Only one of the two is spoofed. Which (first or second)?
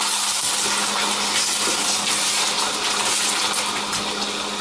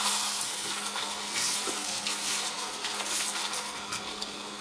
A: second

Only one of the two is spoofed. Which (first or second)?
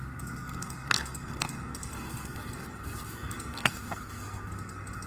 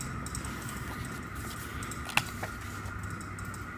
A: first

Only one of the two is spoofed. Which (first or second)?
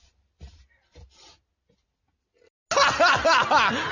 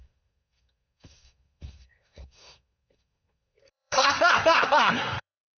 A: second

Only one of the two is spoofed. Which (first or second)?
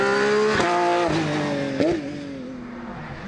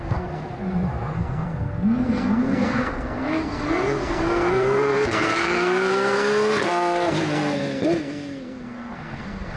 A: second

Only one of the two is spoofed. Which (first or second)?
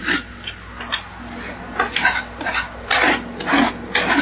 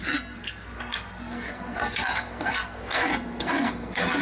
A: second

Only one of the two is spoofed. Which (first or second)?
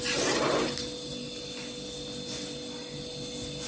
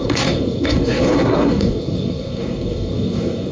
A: second